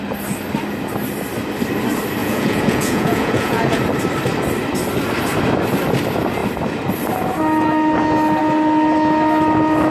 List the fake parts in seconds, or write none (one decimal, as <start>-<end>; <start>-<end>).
2.2-3.8